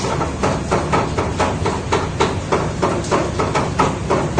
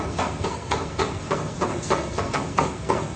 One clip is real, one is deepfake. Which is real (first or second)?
first